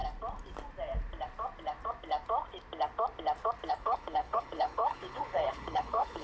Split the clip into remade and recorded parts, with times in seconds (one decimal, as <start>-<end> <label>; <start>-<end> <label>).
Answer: 0.0-3.7 recorded; 3.7-6.2 remade